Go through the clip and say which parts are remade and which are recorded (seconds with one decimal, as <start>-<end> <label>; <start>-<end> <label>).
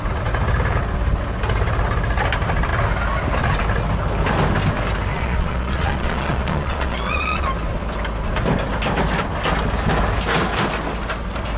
0.0-5.1 recorded; 5.1-7.5 remade; 7.5-11.6 recorded